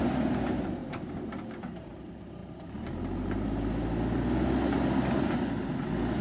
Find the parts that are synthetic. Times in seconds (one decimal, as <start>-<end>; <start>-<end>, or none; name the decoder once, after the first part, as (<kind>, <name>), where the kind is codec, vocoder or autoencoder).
none